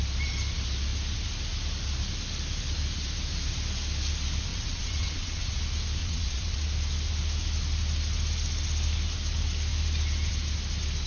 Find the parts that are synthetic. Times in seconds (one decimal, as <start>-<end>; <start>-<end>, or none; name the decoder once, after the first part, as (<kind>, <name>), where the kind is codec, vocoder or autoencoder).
4.5-5.6 (vocoder, WaveNeXt); 6.0-6.7